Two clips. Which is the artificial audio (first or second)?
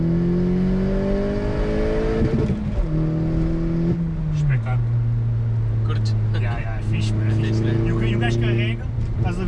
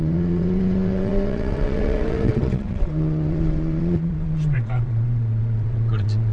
second